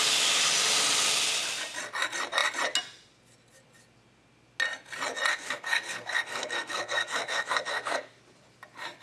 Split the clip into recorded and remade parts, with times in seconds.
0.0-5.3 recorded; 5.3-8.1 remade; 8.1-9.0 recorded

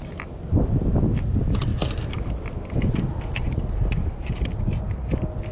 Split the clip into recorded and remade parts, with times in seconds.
0.0-5.5 recorded

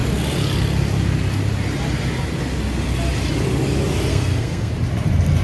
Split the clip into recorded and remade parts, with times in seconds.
0.0-4.1 recorded; 4.1-4.7 remade; 4.7-5.4 recorded

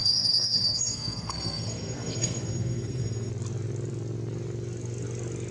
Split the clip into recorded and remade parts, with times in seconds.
0.0-3.3 remade; 3.3-5.5 recorded